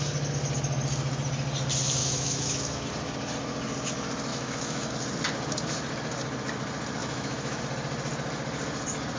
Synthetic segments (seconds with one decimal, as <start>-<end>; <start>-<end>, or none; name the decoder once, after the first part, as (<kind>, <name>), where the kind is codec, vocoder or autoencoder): 2.0-2.9 (autoencoder, DAC-VAE); 4.3-4.9; 7.0-7.6